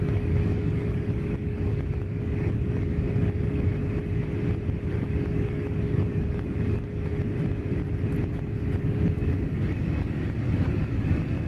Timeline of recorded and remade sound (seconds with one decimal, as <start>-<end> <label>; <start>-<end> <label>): 0.0-3.8 remade; 3.8-4.9 recorded; 4.9-7.1 remade; 7.1-8.8 recorded; 8.8-11.5 remade